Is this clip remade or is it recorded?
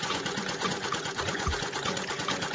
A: remade